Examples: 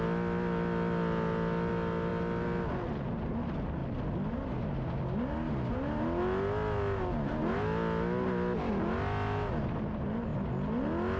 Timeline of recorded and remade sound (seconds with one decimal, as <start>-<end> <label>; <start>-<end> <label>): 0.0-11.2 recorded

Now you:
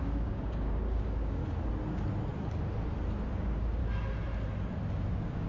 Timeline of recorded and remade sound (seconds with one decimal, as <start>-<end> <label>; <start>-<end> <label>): 0.0-1.4 remade; 1.4-3.3 recorded; 3.3-3.8 remade; 3.8-5.1 recorded; 5.1-5.5 remade

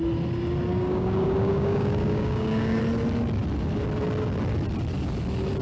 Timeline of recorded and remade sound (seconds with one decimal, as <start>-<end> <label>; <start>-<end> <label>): 0.0-0.7 recorded; 0.7-2.8 remade; 2.8-5.6 recorded

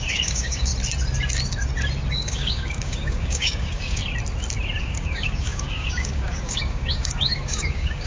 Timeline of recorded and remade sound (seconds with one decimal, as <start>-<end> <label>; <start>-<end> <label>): 0.0-0.7 remade; 0.7-2.1 recorded; 2.1-4.0 remade; 4.0-4.8 recorded; 4.8-8.1 remade